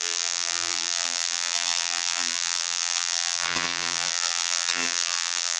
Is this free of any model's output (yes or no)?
no